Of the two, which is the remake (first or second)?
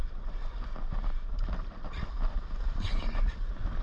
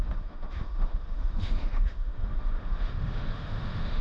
second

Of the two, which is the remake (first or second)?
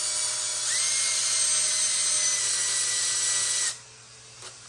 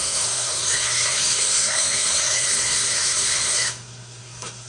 second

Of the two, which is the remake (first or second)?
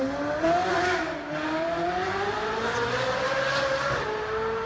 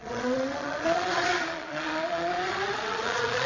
second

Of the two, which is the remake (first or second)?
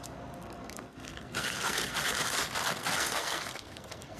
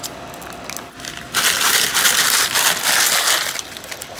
first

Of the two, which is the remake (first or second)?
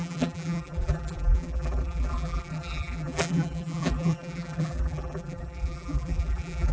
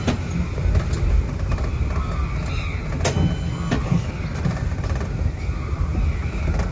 first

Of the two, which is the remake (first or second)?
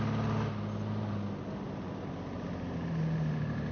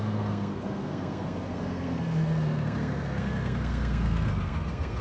second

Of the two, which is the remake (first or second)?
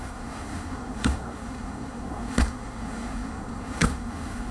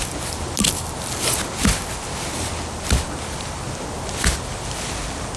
first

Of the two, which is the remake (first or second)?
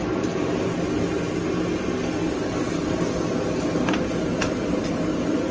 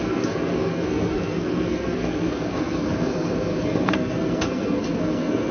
second